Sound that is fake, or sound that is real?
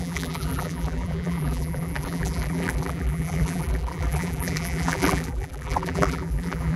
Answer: fake